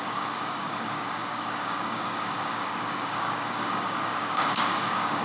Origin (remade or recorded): remade